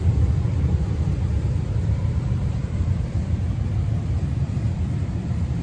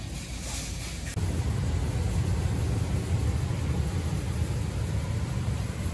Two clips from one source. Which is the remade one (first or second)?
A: first